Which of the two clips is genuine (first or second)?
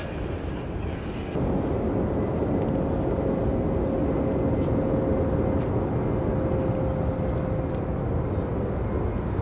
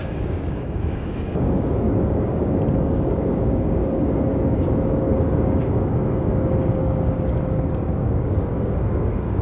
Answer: first